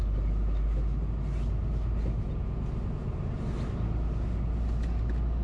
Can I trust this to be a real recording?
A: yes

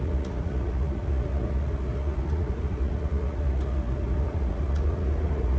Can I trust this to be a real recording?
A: no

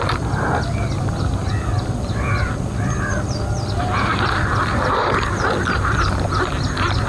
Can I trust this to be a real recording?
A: yes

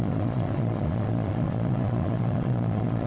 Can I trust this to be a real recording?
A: no